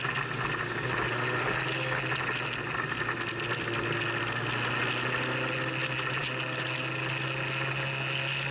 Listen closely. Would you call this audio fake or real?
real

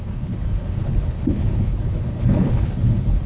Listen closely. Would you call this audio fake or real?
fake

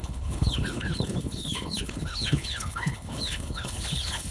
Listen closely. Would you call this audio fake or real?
fake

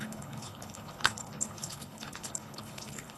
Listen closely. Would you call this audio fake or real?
fake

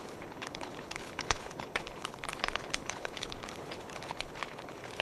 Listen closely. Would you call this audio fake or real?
fake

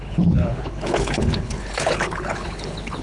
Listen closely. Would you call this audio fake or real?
fake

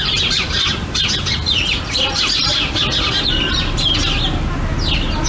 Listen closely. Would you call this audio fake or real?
real